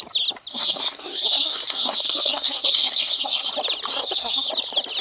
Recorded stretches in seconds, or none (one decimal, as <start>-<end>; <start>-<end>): 0.0-0.5; 3.5-3.9; 4.5-5.0